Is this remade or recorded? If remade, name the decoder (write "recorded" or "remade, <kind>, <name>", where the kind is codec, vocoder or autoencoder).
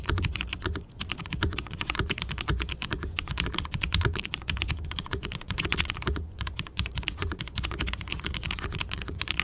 remade, vocoder, Vocos